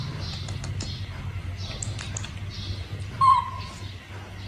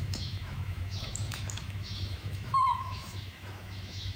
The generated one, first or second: second